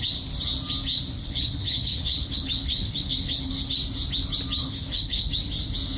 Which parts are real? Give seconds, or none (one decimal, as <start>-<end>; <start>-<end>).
0.0-1.2; 3.5-4.6; 5.3-6.0